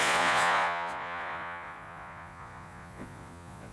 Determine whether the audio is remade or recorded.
remade